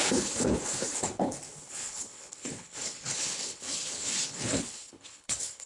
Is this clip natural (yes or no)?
no